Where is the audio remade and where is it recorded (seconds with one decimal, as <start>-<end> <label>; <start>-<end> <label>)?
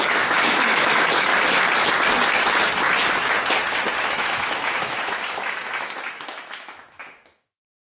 0.0-1.3 remade; 1.3-4.0 recorded; 4.0-7.9 remade